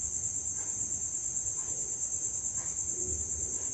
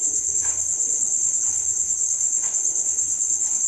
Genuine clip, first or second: first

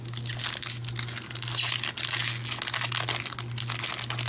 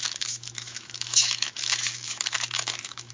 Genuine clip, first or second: first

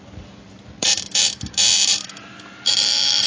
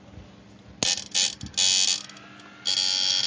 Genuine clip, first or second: second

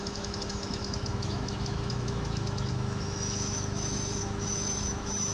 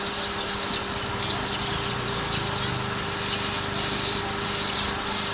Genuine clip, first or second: second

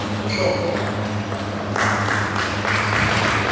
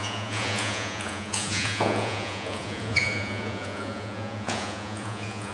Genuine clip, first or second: first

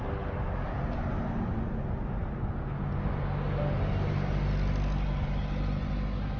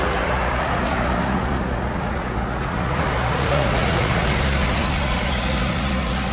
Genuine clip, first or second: first